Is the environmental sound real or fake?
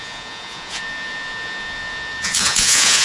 fake